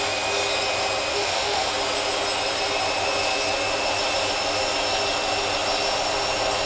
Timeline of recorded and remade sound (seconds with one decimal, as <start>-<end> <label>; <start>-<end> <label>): 0.0-1.1 recorded; 1.1-1.7 remade; 1.7-6.7 recorded